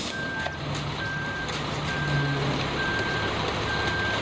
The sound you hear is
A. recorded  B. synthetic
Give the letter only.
A